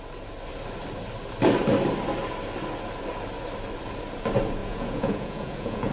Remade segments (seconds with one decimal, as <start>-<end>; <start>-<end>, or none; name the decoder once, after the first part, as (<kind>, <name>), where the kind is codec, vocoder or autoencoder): 4.6-5.9 (vocoder, Vocos)